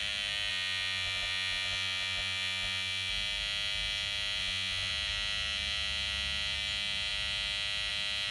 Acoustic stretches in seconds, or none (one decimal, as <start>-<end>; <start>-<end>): 0.0-0.5; 3.1-4.4; 4.9-8.3